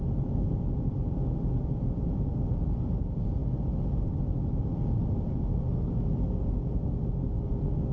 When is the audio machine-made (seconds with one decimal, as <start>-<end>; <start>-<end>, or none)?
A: none